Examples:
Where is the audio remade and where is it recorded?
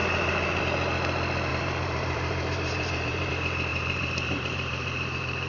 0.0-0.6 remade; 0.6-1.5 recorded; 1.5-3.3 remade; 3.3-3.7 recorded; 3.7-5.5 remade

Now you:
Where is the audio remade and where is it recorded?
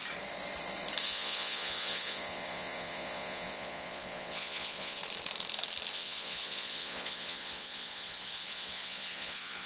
0.0-1.0 recorded; 1.0-5.0 remade; 5.0-5.9 recorded; 5.9-9.7 remade